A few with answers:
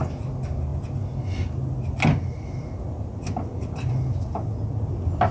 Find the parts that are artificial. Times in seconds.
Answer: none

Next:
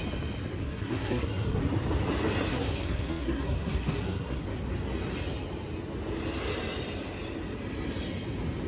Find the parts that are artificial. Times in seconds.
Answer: 0.6-1.6 (codec, SNAC); 2.5-4.4

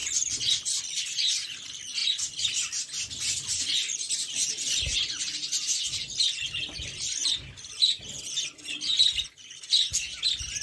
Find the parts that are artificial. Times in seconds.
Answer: none

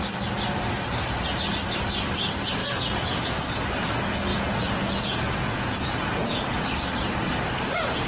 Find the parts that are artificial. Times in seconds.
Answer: 2.6-3.3 (vocoder, Vocos); 4.3-6.9

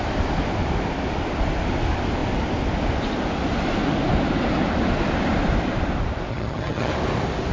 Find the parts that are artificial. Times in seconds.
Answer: 6.3-6.9 (vocoder, HiFi-GAN)

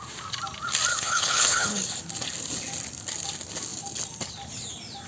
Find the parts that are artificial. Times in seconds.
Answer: 0.9-2.0 (codec, HILCodec)

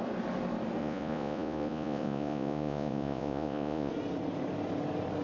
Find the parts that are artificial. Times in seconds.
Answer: 0.8-3.9 (vocoder, Vocos)